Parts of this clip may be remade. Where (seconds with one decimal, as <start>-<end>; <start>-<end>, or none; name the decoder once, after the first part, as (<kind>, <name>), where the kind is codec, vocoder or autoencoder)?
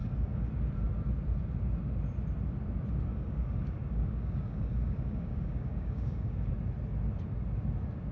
0.0-0.5 (codec, DAC); 3.1-6.5